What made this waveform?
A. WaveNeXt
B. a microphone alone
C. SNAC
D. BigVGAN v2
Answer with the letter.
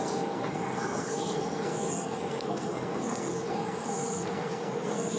C